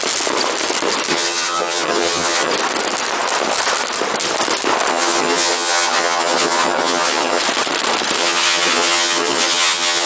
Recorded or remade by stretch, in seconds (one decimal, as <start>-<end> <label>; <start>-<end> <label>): 0.0-1.1 recorded; 1.1-2.5 remade; 2.5-4.9 recorded; 4.9-7.4 remade; 7.4-8.2 recorded; 8.2-10.1 remade